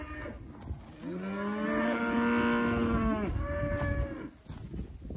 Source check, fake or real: real